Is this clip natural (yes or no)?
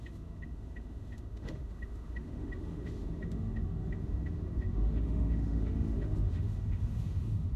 no